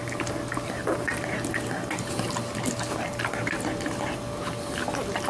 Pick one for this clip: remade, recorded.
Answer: recorded